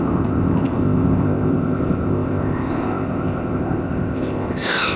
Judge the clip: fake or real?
fake